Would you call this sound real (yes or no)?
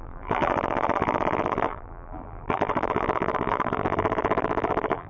no